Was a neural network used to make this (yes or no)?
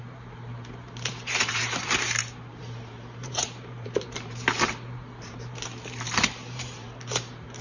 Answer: yes